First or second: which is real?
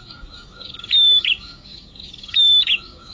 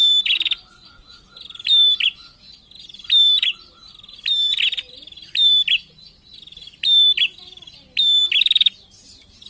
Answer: second